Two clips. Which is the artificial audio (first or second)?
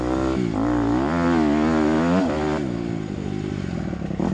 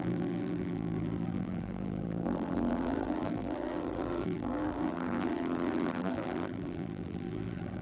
second